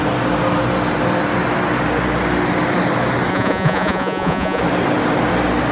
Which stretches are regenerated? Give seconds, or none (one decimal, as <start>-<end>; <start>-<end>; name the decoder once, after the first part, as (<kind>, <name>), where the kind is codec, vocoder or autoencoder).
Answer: 3.3-4.6 (vocoder, Vocos)